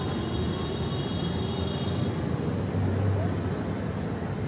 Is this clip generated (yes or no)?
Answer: no